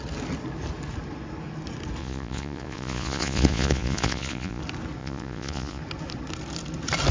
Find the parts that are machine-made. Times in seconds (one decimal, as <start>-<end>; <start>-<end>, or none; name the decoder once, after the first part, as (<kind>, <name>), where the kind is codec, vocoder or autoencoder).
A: 2.0-4.6 (vocoder, Vocos); 5.0-5.8